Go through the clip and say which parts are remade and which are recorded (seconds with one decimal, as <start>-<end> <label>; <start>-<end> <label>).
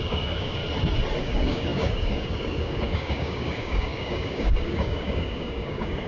0.0-0.6 remade; 0.6-1.2 recorded; 1.2-6.1 remade